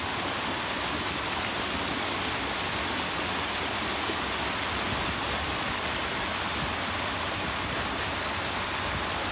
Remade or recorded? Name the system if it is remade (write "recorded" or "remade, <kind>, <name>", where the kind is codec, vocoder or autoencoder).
recorded